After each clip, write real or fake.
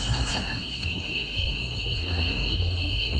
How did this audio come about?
fake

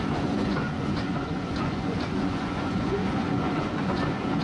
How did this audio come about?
fake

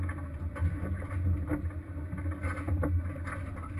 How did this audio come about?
real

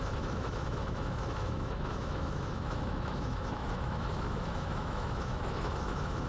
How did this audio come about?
fake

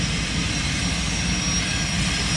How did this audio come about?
real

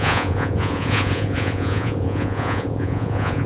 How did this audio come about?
fake